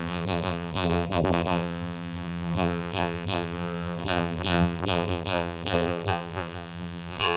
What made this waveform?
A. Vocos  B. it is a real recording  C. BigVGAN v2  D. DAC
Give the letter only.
C